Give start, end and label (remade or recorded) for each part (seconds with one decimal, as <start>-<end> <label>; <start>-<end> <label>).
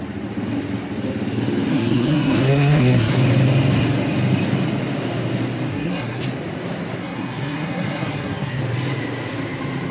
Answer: 0.0-1.7 recorded; 1.7-3.1 remade; 3.1-5.7 recorded; 5.7-6.2 remade; 6.2-7.0 recorded; 7.0-8.6 remade; 8.6-9.9 recorded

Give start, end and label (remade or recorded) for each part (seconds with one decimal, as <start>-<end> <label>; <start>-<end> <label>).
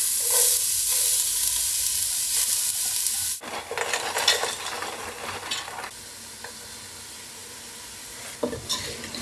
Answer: 0.0-9.2 recorded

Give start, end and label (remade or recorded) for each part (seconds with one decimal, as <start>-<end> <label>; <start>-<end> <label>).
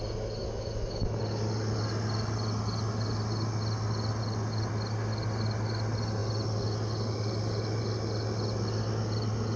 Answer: 0.0-0.4 recorded; 0.4-1.2 remade; 1.2-9.6 recorded